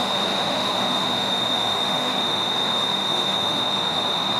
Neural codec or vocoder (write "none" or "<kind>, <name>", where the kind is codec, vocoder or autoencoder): autoencoder, DAC-VAE